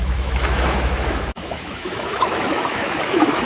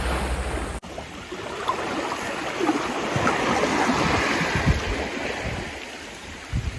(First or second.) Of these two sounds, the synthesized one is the first